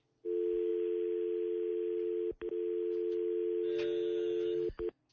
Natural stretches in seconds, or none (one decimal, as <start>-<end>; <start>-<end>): 0.0-5.1